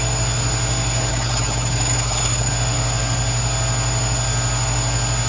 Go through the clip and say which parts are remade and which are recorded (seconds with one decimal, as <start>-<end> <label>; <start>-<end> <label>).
0.0-1.1 recorded; 1.1-2.5 remade; 2.5-5.3 recorded